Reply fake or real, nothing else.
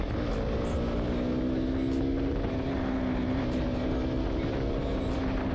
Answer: real